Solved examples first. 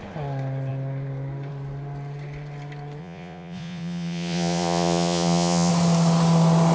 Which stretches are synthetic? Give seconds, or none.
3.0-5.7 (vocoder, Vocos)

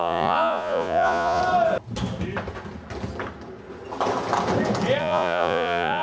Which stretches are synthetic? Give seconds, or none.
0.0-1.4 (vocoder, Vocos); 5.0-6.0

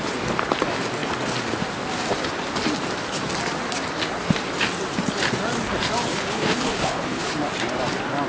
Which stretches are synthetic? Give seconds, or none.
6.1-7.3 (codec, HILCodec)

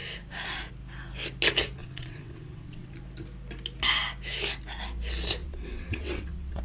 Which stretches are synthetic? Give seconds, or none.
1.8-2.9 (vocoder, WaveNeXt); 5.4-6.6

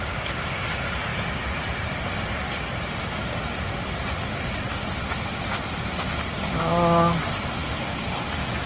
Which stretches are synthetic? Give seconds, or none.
none

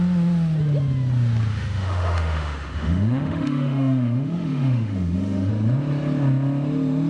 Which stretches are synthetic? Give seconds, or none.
1.5-5.5 (autoencoder, DAC-VAE)